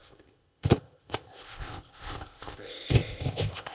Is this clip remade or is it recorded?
remade